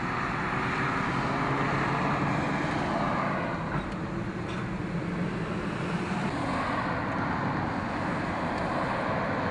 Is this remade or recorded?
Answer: recorded